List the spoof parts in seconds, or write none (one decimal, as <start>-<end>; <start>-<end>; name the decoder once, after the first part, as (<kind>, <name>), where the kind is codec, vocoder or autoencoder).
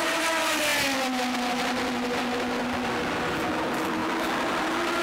0.0-0.7 (vocoder, BigVGAN v2); 3.5-4.0